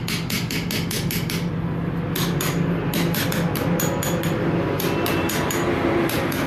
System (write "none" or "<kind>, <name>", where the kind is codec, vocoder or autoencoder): none